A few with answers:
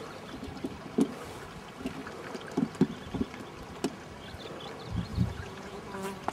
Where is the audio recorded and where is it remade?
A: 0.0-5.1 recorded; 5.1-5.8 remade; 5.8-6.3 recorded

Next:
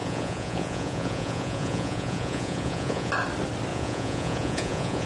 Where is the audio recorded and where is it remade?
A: 0.0-3.1 remade; 3.1-3.7 recorded; 3.7-5.1 remade

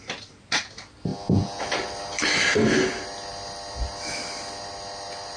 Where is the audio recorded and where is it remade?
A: 0.0-1.1 recorded; 1.1-1.6 remade; 1.6-5.4 recorded

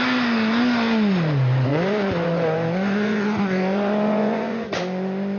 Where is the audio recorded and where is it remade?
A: 0.0-1.7 recorded; 1.7-4.8 remade; 4.8-5.4 recorded

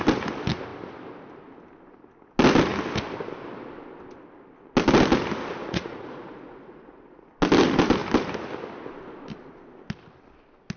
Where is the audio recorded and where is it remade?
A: 0.0-5.6 recorded; 5.6-7.3 remade; 7.3-10.8 recorded

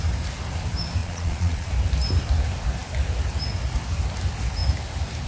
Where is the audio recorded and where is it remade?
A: 0.0-1.0 recorded; 1.0-1.7 remade; 1.7-5.3 recorded